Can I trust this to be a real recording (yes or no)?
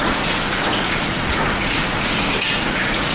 no